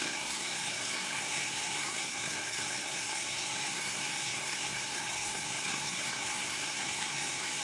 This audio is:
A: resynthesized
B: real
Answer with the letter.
A